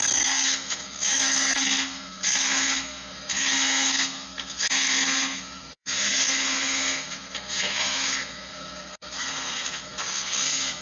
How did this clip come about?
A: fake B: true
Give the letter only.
A